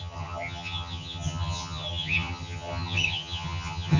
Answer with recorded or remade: remade